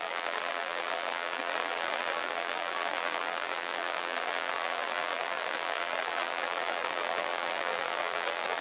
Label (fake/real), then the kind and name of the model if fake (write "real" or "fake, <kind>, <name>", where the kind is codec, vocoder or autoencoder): fake, vocoder, BigVGAN v2